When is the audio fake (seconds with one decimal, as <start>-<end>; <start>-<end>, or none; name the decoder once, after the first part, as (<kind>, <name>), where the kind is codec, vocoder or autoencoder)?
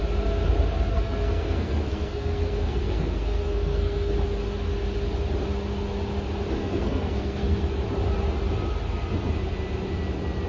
0.9-4.1 (codec, SNAC); 6.6-7.8